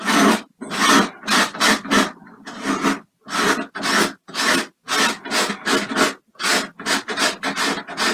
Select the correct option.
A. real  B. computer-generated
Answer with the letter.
A